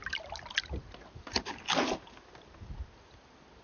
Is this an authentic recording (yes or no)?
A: yes